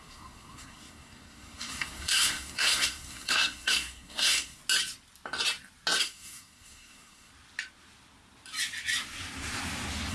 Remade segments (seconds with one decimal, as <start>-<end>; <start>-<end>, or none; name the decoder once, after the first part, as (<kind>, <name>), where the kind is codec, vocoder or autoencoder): 0.0-4.6 (codec, SNAC); 6.0-7.3